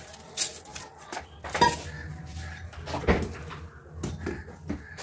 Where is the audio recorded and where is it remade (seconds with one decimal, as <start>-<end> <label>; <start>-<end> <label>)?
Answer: 0.0-0.7 recorded; 0.7-1.6 remade; 1.6-5.0 recorded